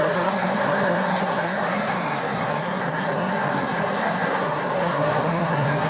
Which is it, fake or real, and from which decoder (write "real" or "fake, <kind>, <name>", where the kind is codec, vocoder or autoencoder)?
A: fake, codec, SNAC